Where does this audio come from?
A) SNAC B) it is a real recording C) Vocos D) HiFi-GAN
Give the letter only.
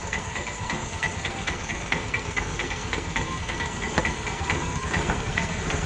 A